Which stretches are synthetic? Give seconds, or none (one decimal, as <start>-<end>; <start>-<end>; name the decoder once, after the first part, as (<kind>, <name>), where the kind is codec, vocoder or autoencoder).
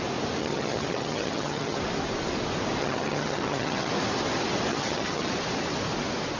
0.4-1.8 (vocoder, HiFi-GAN); 2.8-3.9; 4.7-5.3